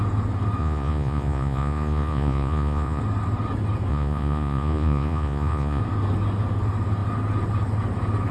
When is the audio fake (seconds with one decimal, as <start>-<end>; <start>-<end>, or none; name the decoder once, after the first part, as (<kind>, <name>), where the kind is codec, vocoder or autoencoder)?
0.6-3.0 (vocoder, Vocos); 3.9-5.8